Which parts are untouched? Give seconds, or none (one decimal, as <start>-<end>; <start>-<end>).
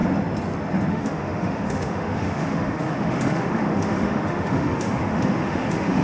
0.0-0.9